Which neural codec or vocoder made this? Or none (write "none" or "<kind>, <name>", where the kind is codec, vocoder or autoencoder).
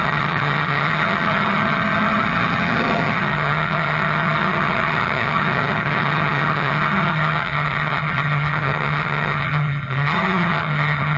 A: vocoder, HiFi-GAN